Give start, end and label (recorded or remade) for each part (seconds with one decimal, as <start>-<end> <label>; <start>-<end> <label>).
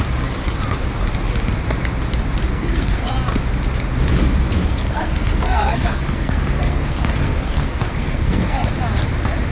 0.0-2.5 recorded; 2.5-3.1 remade; 3.1-4.6 recorded; 4.6-8.7 remade; 8.7-9.5 recorded